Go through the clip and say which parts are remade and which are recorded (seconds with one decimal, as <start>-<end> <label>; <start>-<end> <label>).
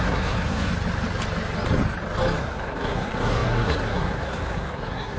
0.0-0.7 remade; 0.7-2.4 recorded; 2.4-5.2 remade